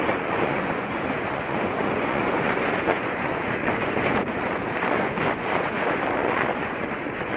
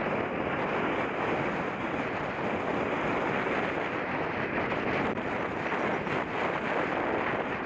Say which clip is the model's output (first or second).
first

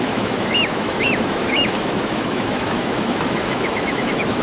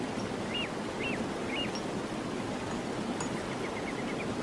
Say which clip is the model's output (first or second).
first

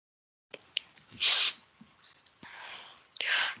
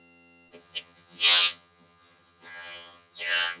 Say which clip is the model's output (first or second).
second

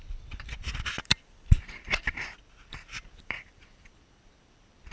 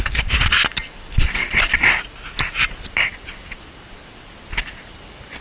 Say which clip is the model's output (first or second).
first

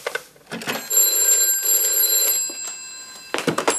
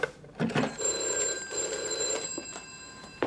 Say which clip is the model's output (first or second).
second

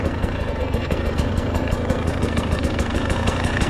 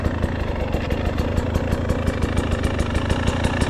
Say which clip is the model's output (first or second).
first